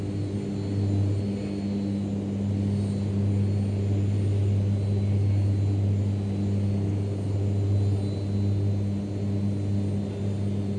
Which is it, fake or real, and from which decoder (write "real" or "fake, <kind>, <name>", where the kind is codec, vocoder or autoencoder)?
real